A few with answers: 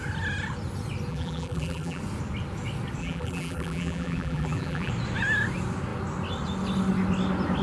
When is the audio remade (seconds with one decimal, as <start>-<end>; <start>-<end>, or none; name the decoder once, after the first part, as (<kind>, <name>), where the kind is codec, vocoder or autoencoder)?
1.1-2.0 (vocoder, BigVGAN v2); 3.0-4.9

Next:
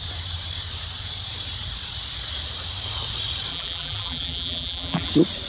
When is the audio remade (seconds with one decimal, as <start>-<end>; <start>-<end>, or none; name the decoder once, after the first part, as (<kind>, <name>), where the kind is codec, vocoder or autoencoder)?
3.5-5.1 (vocoder, BigVGAN v2)

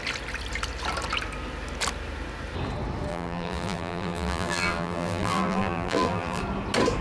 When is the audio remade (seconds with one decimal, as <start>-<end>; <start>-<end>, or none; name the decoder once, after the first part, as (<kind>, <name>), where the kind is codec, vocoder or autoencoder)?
3.1-6.4 (vocoder, BigVGAN v2)

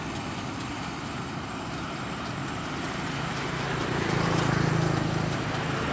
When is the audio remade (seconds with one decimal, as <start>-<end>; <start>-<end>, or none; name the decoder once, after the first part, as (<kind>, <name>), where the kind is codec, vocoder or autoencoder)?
0.7-2.3 (vocoder, BigVGAN v2); 3.3-3.9

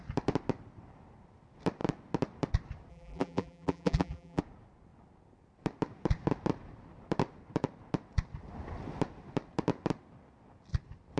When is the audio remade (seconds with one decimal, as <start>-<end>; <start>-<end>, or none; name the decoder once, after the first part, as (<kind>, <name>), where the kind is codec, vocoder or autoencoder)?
2.9-4.4 (vocoder, BigVGAN v2)